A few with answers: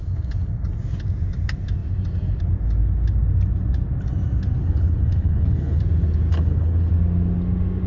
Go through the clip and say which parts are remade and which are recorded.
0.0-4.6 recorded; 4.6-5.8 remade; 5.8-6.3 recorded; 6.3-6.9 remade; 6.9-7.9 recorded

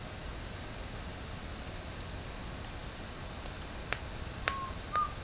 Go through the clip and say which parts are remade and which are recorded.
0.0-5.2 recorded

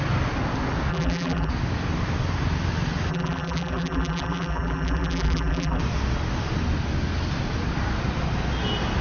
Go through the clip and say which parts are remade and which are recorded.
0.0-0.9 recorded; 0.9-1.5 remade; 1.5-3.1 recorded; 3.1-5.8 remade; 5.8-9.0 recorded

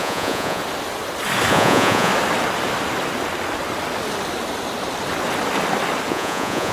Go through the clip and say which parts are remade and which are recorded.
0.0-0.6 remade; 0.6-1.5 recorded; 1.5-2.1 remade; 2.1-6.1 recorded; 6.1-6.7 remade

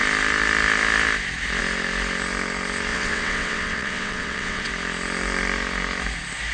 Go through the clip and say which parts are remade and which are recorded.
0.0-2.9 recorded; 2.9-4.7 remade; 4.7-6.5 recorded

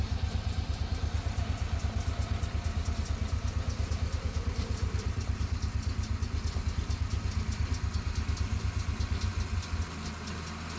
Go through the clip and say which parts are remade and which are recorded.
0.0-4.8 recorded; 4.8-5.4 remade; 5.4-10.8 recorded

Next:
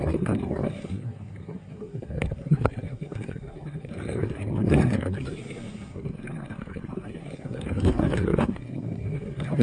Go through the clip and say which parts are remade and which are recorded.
0.0-9.6 remade

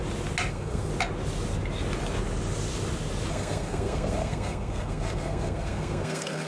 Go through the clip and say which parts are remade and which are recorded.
0.0-0.5 recorded; 0.5-0.9 remade; 0.9-3.3 recorded; 3.3-6.5 remade